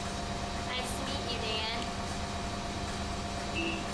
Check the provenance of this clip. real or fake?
real